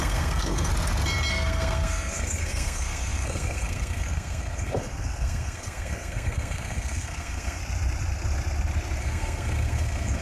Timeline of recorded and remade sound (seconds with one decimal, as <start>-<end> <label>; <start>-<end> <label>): 0.0-0.7 remade; 0.7-1.3 recorded; 1.3-7.6 remade; 7.6-9.0 recorded; 9.0-10.2 remade